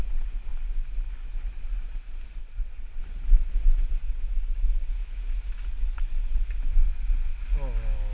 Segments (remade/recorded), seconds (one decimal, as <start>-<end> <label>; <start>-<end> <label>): 0.0-2.4 recorded; 2.4-3.0 remade; 3.0-4.0 recorded; 4.0-4.9 remade; 4.9-5.7 recorded; 5.7-7.4 remade; 7.4-8.1 recorded